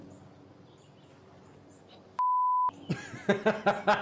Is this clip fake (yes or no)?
no